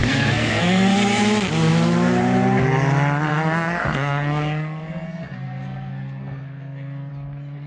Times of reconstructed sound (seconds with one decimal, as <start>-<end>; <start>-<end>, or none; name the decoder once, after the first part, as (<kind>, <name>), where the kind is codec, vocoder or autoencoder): 0.0-1.2 (codec, SNAC); 3.3-7.1